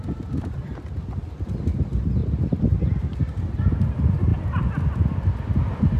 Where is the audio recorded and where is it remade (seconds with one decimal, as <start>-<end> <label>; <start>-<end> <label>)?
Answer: 0.0-6.0 recorded